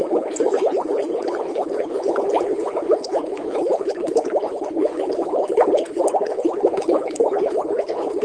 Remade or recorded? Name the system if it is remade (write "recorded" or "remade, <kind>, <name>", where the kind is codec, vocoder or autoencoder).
remade, codec, HILCodec